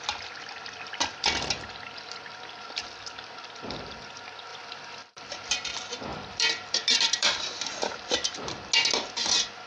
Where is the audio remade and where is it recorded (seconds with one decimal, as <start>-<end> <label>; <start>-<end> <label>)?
0.0-4.5 recorded; 4.5-5.5 remade; 5.5-6.1 recorded; 6.1-8.7 remade; 8.7-9.7 recorded